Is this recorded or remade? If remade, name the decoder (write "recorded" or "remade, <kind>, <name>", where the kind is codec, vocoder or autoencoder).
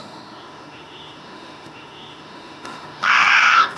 remade, autoencoder, DAC-VAE